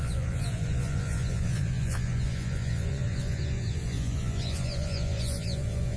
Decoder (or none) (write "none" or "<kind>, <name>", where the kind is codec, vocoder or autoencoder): vocoder, Vocos